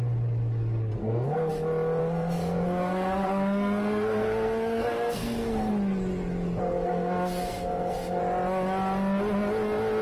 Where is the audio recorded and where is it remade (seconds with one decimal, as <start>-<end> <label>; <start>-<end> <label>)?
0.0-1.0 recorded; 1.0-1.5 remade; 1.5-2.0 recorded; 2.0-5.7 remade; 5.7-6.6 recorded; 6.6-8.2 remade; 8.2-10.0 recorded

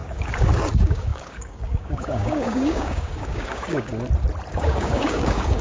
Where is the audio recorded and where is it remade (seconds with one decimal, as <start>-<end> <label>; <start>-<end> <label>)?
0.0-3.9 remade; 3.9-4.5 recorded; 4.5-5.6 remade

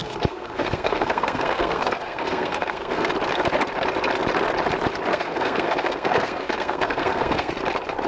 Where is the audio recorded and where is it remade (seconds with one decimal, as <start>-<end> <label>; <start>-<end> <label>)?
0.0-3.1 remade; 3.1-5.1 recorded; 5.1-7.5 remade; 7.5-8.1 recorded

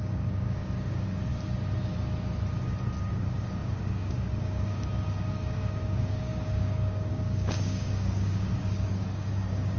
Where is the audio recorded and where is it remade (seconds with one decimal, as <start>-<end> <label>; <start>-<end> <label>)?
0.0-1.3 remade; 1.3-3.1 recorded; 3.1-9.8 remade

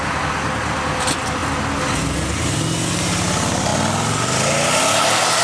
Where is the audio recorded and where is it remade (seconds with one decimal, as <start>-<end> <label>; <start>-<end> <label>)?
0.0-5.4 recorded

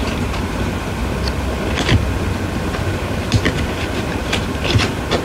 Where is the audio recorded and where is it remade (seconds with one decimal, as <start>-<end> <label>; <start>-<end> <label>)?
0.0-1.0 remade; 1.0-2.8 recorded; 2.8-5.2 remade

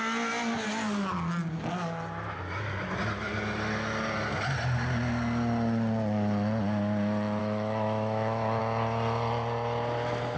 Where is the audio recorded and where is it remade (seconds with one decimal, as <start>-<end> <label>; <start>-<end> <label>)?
0.0-7.4 recorded; 7.4-8.6 remade; 8.6-10.4 recorded